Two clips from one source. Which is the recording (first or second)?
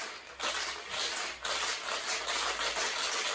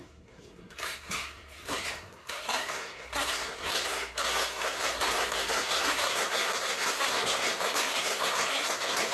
first